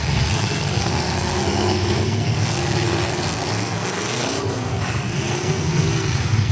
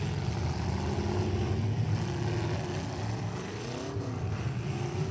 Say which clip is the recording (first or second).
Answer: second